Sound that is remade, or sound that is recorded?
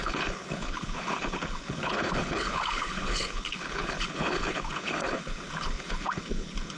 remade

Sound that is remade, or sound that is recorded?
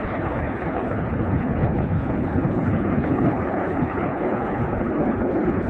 remade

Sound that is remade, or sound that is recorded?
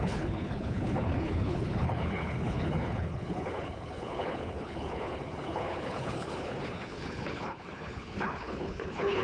remade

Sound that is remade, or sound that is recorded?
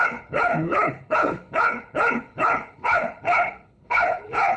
remade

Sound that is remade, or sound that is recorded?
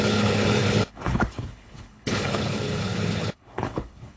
remade